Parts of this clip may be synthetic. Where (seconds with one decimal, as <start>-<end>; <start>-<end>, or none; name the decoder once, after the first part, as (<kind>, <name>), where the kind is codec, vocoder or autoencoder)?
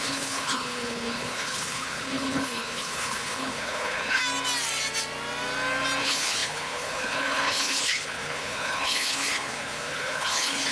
0.0-4.2 (codec, HILCodec); 6.0-10.7